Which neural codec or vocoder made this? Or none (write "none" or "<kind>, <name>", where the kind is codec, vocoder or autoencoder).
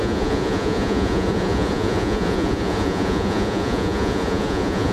vocoder, Vocos